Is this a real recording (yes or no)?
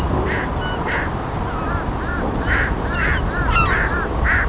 yes